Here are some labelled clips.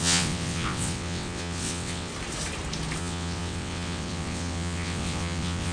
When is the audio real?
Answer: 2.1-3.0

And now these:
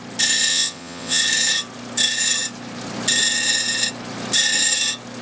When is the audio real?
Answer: 0.0-0.5; 1.2-5.2

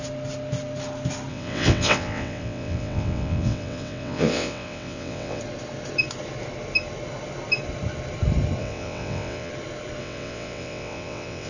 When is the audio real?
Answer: 0.0-1.3; 5.4-8.6; 9.5-10.0

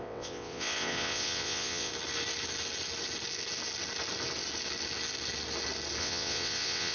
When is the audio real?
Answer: 1.9-6.0